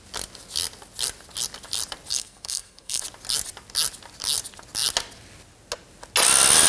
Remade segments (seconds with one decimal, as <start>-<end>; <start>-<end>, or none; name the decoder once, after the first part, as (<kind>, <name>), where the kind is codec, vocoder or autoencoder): 2.1-3.0 (codec, SNAC)